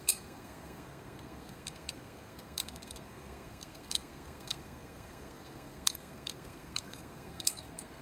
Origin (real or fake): fake